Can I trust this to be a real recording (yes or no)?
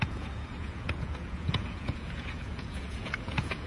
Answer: no